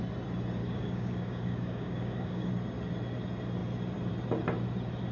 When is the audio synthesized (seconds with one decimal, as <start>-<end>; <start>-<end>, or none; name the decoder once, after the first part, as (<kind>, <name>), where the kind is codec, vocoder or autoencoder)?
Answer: 0.6-2.5 (codec, DAC)